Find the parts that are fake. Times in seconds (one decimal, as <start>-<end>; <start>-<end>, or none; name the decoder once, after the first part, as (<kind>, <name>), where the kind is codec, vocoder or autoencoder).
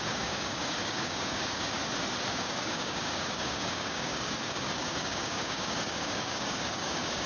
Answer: 0.0-1.8 (codec, DAC); 2.3-7.3